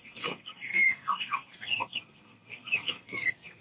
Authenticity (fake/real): fake